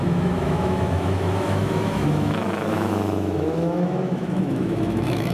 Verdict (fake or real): fake